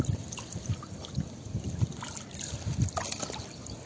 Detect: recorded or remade recorded